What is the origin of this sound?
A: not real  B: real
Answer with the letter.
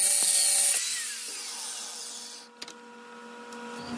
B